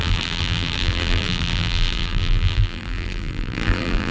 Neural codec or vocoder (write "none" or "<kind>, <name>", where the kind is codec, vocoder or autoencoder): vocoder, BigVGAN v2